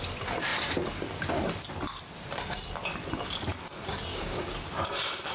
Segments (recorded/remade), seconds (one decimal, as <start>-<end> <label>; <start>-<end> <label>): 0.0-4.1 recorded; 4.1-4.7 remade; 4.7-5.3 recorded